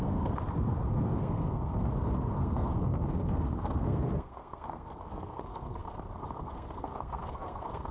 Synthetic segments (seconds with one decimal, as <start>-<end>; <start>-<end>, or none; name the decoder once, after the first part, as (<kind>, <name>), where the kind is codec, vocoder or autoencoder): 0.0-7.9 (codec, SNAC)